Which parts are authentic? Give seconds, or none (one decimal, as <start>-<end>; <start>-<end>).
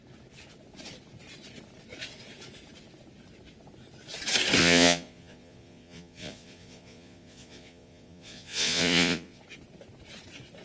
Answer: 0.0-4.6; 9.4-10.6